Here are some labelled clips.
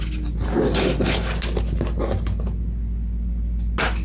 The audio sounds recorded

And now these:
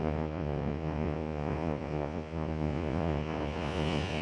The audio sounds remade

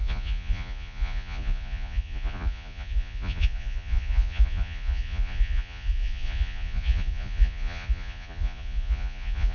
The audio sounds remade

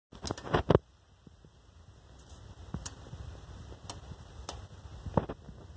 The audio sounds recorded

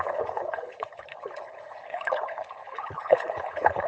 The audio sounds remade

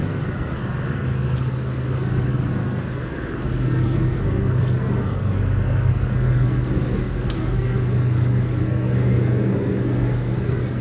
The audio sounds remade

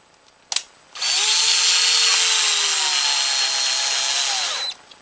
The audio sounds recorded